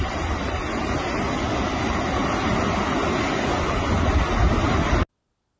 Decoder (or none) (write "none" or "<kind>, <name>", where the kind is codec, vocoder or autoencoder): none